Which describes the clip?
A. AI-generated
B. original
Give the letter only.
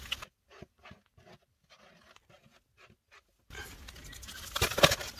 B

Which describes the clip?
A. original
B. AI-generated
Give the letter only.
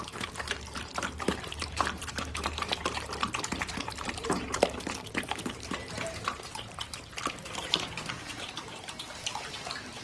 B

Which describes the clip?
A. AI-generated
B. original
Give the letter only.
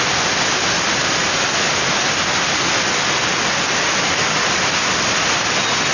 B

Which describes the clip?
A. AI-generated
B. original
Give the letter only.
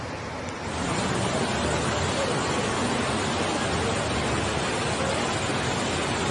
B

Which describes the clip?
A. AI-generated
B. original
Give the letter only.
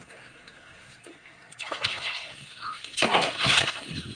A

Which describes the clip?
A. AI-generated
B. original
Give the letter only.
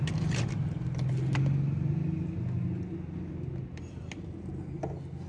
B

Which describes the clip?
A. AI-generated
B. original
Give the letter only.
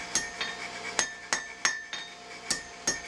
B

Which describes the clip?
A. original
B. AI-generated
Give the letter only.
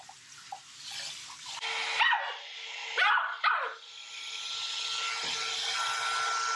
A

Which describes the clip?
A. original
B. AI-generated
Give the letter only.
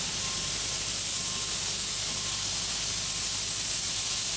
A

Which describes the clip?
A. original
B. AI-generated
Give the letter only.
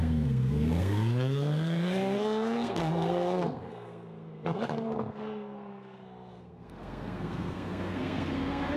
B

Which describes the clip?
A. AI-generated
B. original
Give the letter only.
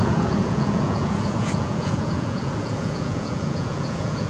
A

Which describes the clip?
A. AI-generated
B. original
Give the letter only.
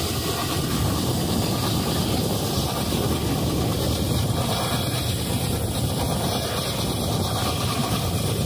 B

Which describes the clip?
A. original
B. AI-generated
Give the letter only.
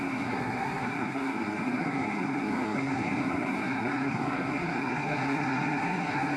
B